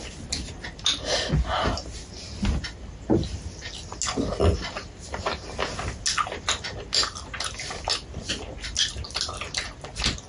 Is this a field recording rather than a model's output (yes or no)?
yes